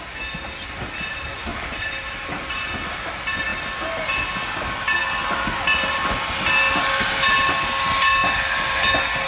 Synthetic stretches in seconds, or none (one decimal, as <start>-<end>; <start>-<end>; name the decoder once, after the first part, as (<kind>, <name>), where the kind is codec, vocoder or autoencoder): 1.5-2.3 (vocoder, BigVGAN v2)